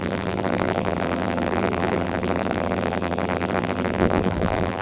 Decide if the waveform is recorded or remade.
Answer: remade